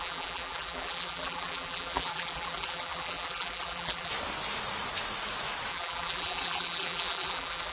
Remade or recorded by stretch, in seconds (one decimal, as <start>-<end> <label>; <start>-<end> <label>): 0.0-4.1 remade; 4.1-5.7 recorded; 5.7-7.7 remade